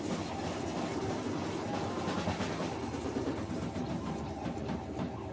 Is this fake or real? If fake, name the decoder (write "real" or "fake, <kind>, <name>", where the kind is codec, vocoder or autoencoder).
real